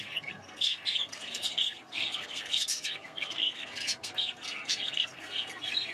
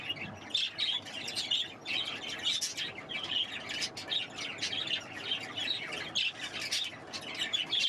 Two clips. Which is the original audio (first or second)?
second